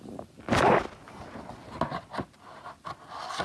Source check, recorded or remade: recorded